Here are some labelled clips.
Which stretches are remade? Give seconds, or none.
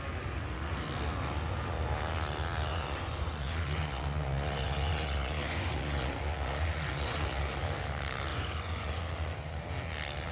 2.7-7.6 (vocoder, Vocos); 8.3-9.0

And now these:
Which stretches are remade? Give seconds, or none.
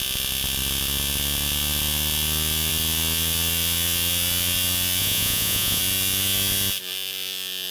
5.0-5.8 (vocoder, Vocos)